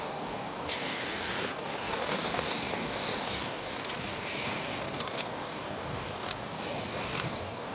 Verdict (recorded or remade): remade